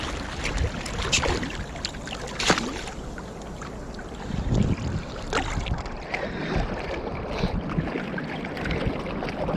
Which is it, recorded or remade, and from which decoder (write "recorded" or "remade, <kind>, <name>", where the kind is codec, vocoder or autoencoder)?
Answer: recorded